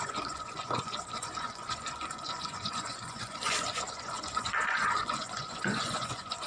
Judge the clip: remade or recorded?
remade